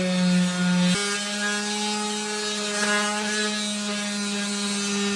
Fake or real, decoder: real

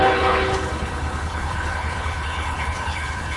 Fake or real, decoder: fake, codec, HILCodec